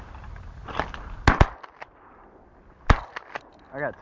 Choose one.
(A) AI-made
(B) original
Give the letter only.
B